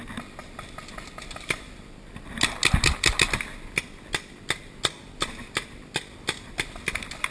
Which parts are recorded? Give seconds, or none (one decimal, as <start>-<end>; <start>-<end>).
0.0-7.3